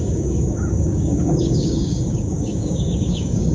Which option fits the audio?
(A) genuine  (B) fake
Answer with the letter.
B